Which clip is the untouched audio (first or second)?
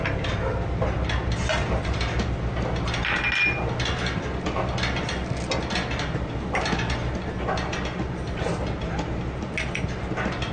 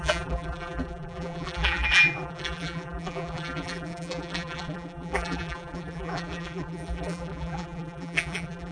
first